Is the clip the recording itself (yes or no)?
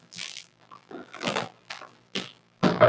no